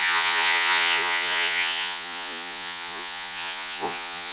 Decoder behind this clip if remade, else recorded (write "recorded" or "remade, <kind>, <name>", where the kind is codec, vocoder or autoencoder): remade, vocoder, Vocos